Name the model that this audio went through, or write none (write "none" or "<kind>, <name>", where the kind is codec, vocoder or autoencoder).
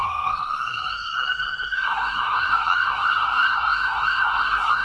codec, SNAC